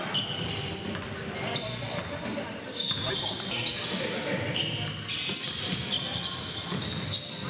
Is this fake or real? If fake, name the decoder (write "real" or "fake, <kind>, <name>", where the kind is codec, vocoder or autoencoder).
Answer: real